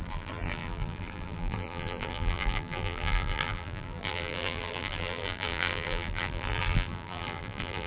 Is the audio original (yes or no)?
no